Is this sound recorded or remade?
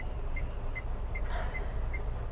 recorded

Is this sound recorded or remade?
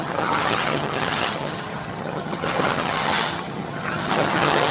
remade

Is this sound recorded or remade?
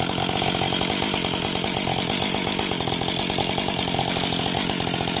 recorded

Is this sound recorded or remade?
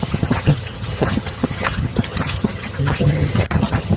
remade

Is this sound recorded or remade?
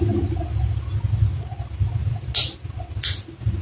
recorded